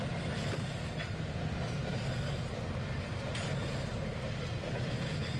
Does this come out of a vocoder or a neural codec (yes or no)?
no